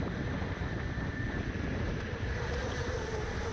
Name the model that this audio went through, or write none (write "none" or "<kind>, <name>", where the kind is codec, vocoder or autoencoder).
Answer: vocoder, BigVGAN v2